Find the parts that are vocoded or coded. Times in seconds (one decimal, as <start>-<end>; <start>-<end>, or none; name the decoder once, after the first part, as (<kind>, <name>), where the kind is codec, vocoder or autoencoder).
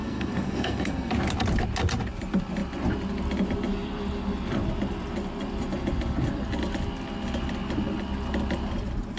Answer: 0.0-1.1 (codec, SNAC)